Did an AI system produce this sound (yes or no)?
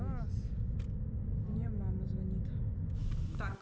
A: no